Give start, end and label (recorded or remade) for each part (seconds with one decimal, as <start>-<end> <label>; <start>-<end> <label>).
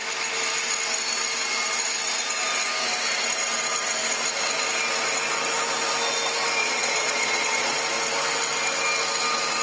0.0-6.6 recorded; 6.6-7.8 remade; 7.8-9.6 recorded